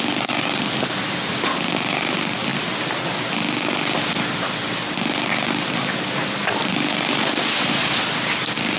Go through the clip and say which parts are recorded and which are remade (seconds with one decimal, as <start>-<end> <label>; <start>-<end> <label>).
0.0-8.8 recorded